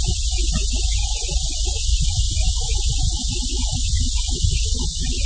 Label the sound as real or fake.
real